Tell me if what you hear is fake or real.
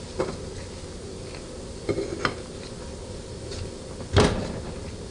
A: real